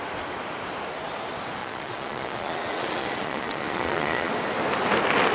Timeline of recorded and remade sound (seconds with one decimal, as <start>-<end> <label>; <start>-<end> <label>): 0.0-1.6 recorded; 1.6-4.3 remade; 4.3-5.3 recorded